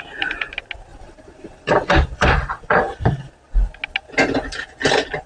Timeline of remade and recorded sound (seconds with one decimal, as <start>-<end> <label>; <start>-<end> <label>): 0.0-0.9 recorded; 0.9-3.3 remade; 3.3-5.3 recorded

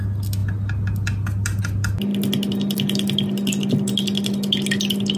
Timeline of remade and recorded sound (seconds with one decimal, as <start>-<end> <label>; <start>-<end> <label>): 0.0-5.2 recorded

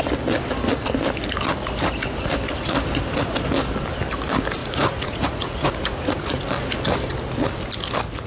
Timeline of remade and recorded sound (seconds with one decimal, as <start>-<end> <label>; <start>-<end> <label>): 0.0-4.6 recorded; 4.6-6.4 remade; 6.4-8.3 recorded

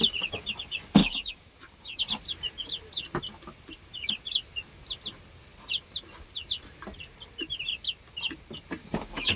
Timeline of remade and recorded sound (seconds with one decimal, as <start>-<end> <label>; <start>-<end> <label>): 0.0-1.0 recorded; 1.0-2.0 remade; 2.0-8.8 recorded; 8.8-9.4 remade

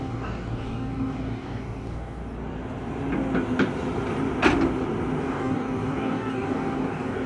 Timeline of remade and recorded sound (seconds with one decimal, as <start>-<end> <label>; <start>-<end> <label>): 0.0-2.2 remade; 2.2-5.2 recorded; 5.2-7.3 remade

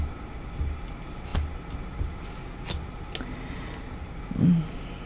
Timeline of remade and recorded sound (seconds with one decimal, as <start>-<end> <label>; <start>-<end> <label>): 0.0-5.1 recorded

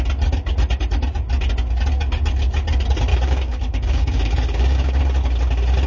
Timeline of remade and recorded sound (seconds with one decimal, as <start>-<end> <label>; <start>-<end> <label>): 0.0-3.1 recorded; 3.1-5.0 remade; 5.0-5.9 recorded